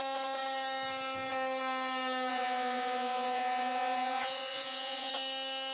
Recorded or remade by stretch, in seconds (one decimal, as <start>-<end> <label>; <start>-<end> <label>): 0.0-2.3 recorded; 2.3-5.1 remade; 5.1-5.7 recorded

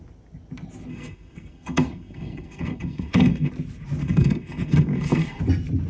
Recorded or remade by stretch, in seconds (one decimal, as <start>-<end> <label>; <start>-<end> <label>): 0.0-0.9 recorded; 0.9-3.5 remade; 3.5-4.0 recorded; 4.0-5.4 remade; 5.4-5.9 recorded

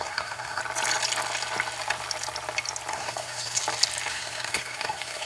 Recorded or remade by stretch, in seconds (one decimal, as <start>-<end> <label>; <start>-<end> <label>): 0.0-0.6 remade; 0.6-2.9 recorded; 2.9-3.6 remade; 3.6-4.1 recorded; 4.1-5.3 remade

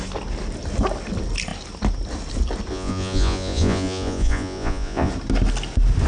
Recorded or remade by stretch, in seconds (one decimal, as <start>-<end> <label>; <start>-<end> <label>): 0.0-2.7 recorded; 2.7-5.1 remade; 5.1-6.1 recorded

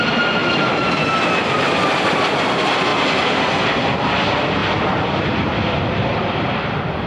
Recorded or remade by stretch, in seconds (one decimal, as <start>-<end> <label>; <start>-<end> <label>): 0.0-0.4 remade; 0.4-1.4 recorded; 1.4-4.6 remade; 4.6-5.2 recorded; 5.2-7.1 remade

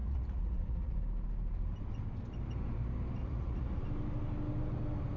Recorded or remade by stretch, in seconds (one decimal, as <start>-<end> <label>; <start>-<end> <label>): 0.0-1.0 remade; 1.0-3.2 recorded; 3.2-3.8 remade; 3.8-5.2 recorded

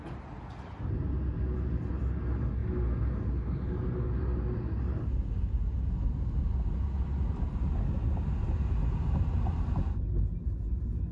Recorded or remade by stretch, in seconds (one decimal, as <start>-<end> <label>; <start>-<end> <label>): 0.0-11.1 recorded